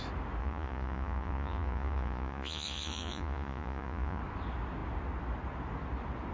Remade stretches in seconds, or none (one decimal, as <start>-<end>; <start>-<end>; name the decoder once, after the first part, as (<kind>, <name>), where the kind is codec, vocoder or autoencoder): 0.4-4.2 (vocoder, Vocos)